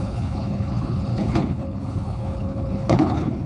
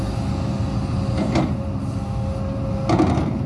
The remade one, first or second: first